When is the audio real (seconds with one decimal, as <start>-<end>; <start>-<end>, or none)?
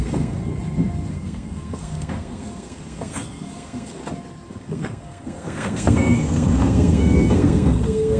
0.5-1.1; 4.0-4.5